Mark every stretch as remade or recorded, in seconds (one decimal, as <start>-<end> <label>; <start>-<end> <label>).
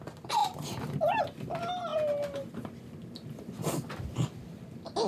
0.0-5.1 recorded